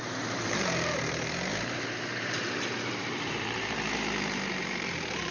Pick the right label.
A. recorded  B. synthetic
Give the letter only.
B